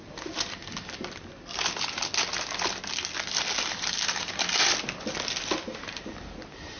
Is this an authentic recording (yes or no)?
yes